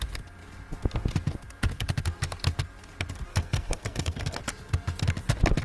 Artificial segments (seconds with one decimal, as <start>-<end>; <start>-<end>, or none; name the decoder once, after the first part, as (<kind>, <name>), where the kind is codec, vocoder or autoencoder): 3.3-4.4 (codec, SNAC)